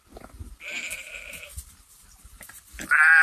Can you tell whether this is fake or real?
fake